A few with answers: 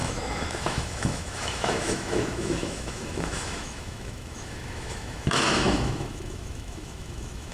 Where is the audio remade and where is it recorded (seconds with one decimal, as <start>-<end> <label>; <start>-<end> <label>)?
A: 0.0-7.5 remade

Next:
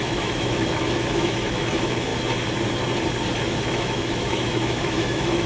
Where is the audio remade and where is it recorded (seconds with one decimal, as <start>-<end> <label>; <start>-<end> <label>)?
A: 0.0-2.1 remade; 2.1-3.4 recorded; 3.4-5.5 remade

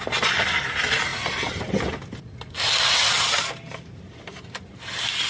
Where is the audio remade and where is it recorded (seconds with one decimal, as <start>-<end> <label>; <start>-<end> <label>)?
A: 0.0-5.3 recorded

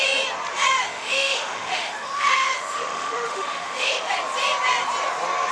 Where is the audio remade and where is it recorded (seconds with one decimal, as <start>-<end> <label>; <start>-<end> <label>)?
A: 0.0-0.8 recorded; 0.8-4.1 remade; 4.1-5.5 recorded